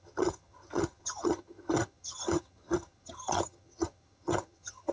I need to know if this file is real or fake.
fake